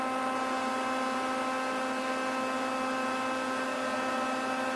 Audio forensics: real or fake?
real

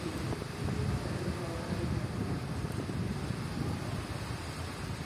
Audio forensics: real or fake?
fake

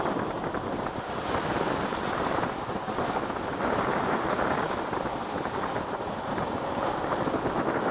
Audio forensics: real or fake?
real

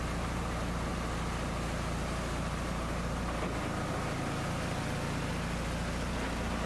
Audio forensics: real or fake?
real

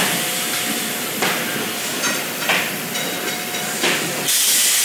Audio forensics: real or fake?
fake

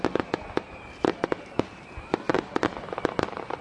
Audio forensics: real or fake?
fake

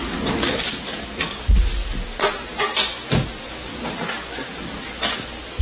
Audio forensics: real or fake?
real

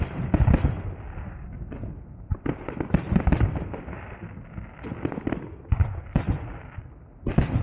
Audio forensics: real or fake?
real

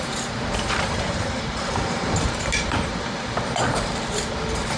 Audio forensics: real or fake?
fake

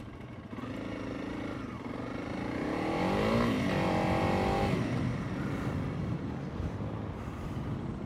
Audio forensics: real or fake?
real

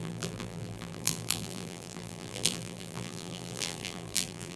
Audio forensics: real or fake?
fake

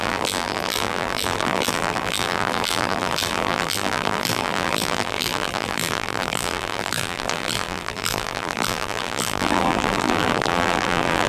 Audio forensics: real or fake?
fake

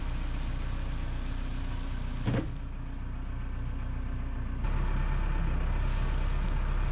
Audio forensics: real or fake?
real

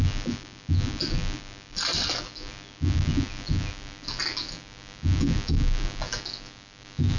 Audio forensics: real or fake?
real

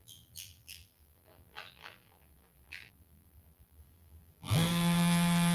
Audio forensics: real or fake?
fake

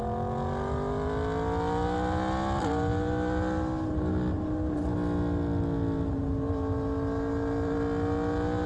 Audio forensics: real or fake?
real